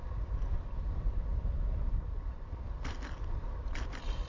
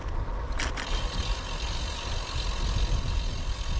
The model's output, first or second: first